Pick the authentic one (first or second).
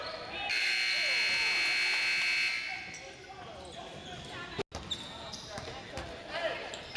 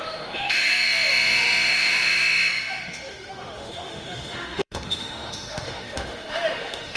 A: first